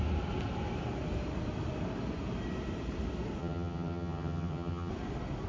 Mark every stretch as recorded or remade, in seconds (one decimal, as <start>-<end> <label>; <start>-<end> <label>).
0.0-3.4 recorded; 3.4-4.9 remade; 4.9-5.5 recorded